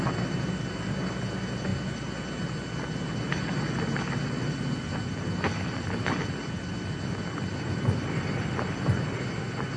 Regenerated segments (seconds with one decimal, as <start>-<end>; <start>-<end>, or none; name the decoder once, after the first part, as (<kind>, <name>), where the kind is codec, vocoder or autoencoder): 7.5-9.8 (vocoder, BigVGAN v2)